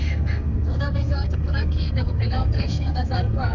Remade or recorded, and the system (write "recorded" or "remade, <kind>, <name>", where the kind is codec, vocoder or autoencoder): remade, codec, SNAC